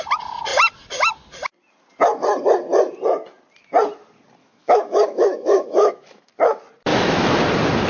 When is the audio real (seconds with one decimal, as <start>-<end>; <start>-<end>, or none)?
0.0-4.4; 6.3-6.9; 7.4-7.9